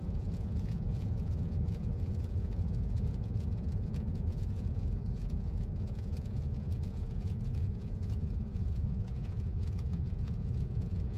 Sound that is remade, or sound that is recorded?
remade